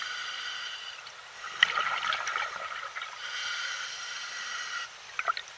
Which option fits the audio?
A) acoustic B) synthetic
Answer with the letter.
A